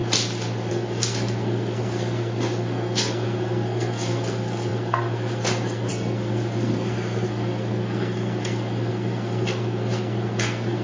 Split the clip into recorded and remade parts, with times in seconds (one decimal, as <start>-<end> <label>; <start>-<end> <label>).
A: 0.0-0.7 recorded; 0.7-10.8 remade

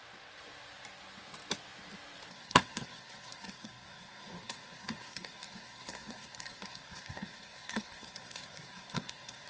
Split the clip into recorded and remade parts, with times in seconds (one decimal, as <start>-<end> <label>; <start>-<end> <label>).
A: 0.0-2.3 recorded; 2.3-9.5 remade

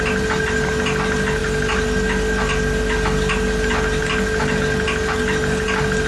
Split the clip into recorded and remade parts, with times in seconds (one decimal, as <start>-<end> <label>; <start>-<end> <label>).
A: 0.0-6.1 recorded

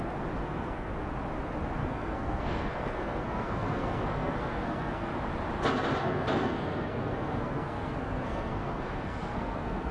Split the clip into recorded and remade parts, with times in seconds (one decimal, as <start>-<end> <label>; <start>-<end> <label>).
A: 0.0-0.4 recorded; 0.4-0.9 remade; 0.9-1.8 recorded; 1.8-5.1 remade; 5.1-6.0 recorded; 6.0-9.9 remade

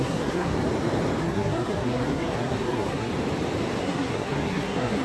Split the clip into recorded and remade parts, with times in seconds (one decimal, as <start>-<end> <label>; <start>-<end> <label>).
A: 0.0-0.5 remade; 0.5-1.2 recorded; 1.2-3.1 remade; 3.1-3.8 recorded; 3.8-5.0 remade

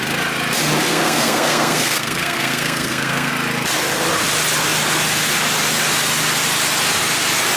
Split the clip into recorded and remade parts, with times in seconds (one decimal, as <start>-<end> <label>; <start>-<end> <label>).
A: 0.0-0.9 recorded; 0.9-3.3 remade; 3.3-7.6 recorded